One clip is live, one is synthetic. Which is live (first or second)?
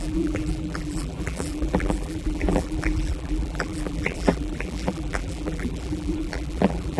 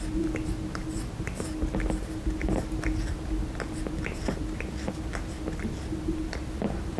second